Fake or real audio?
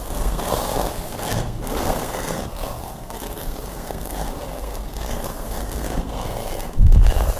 fake